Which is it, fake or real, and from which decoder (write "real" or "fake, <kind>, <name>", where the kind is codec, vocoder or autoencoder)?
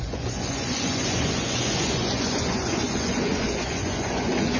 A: fake, vocoder, Vocos